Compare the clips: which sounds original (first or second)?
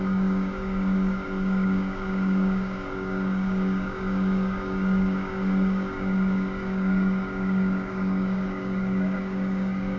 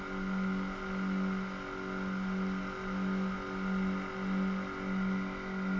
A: second